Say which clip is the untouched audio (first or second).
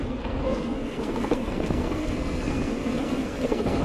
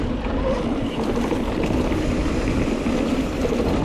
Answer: second